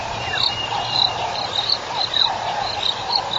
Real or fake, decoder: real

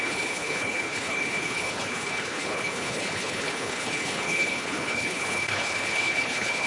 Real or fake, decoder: fake, codec, HILCodec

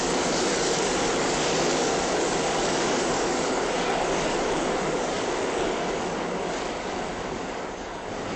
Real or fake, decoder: fake, codec, DAC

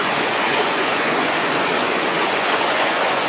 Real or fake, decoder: fake, vocoder, Vocos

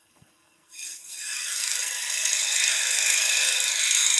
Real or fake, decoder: fake, codec, SNAC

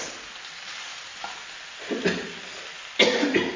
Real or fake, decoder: real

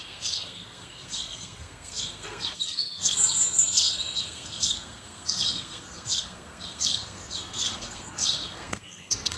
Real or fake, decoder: fake, codec, SNAC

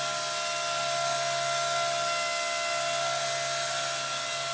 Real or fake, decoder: real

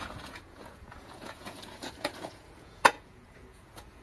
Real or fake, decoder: fake, vocoder, Vocos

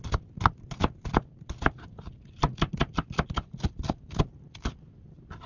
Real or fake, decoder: real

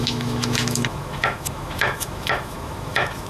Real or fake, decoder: fake, autoencoder, DAC-VAE